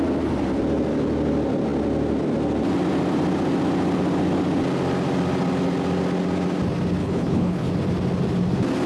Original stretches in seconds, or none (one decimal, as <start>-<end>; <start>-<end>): 0.0-7.0; 7.7-8.9